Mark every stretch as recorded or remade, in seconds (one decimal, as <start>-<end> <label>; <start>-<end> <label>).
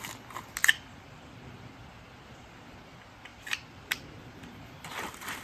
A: 0.0-0.6 recorded; 0.6-2.5 remade; 2.5-3.3 recorded; 3.3-5.4 remade